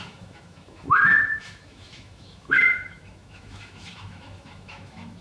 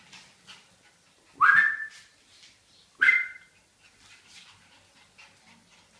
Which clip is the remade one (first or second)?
first